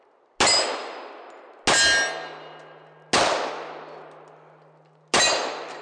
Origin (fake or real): real